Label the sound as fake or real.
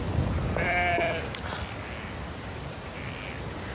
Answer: real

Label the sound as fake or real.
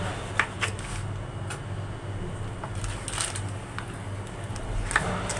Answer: real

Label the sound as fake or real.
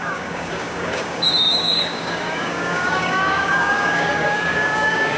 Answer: fake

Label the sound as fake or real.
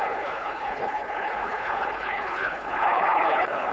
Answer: fake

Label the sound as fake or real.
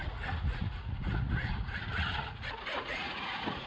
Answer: fake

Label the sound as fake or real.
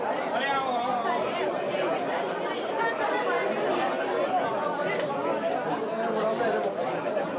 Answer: real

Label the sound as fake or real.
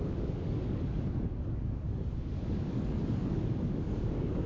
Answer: fake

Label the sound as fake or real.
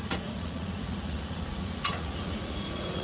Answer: fake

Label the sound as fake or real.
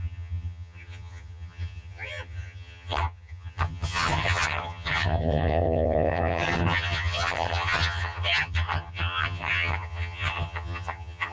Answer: fake